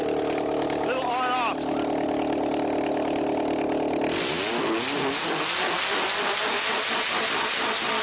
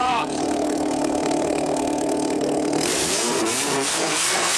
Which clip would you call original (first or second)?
first